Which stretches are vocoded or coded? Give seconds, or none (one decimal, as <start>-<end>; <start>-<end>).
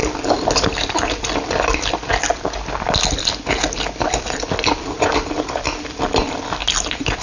none